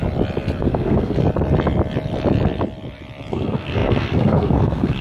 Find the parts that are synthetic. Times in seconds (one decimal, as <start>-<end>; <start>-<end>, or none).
0.6-1.2; 3.3-5.0